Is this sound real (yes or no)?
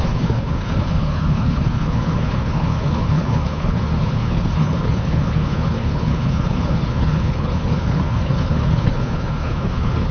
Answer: no